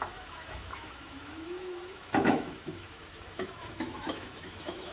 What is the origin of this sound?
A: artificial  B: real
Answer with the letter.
A